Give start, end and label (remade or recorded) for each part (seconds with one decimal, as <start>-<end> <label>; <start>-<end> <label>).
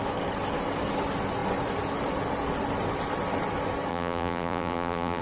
0.0-3.9 recorded; 3.9-5.2 remade